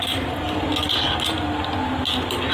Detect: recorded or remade recorded